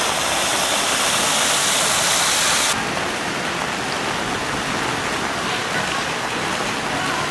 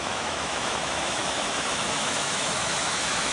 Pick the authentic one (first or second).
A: first